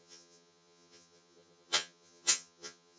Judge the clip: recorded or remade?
remade